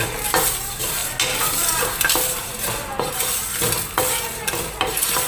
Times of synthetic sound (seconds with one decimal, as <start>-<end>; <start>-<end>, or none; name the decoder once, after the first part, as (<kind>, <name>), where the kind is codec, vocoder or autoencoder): none